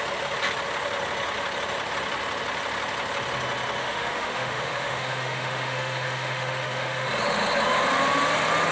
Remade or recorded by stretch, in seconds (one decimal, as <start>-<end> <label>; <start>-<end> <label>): 0.0-3.8 recorded; 3.8-7.1 remade; 7.1-8.7 recorded